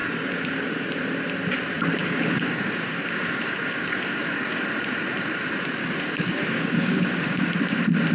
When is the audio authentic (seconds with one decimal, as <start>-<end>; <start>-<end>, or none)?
0.0-2.0; 4.6-5.8; 7.5-8.1